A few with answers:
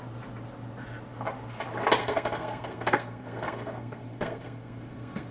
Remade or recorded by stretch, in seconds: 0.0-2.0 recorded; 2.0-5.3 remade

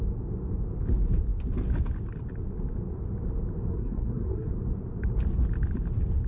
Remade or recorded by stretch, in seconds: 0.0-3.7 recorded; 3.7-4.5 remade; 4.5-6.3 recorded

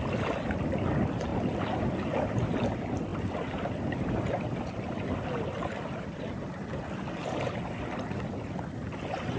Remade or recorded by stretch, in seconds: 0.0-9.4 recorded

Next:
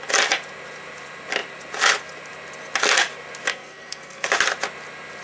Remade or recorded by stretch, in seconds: 0.0-3.5 recorded; 3.5-4.3 remade; 4.3-5.2 recorded